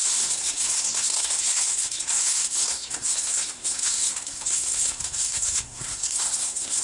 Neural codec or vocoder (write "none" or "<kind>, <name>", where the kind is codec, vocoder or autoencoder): codec, SNAC